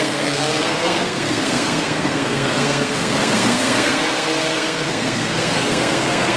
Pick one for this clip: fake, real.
fake